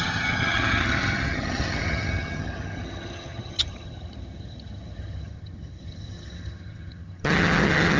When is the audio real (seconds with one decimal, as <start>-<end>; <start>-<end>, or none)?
none